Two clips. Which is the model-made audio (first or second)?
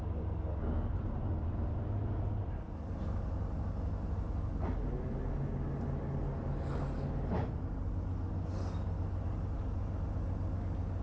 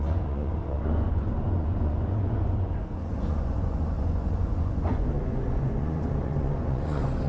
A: second